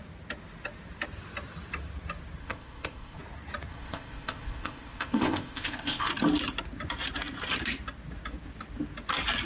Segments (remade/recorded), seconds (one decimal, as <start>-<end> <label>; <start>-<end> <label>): 0.0-2.4 recorded; 2.4-3.2 remade; 3.2-3.7 recorded; 3.7-6.1 remade; 6.1-9.5 recorded